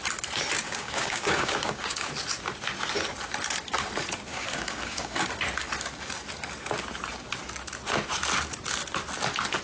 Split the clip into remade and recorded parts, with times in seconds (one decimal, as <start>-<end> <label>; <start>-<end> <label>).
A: 0.0-0.6 recorded; 0.6-2.1 remade; 2.1-4.3 recorded; 4.3-5.2 remade; 5.2-9.6 recorded